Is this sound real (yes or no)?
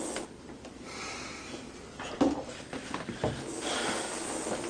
yes